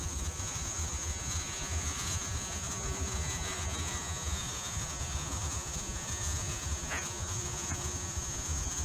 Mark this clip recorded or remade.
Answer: remade